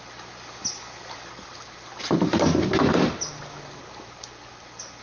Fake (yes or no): no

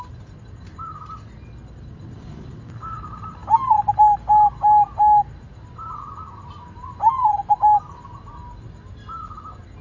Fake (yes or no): no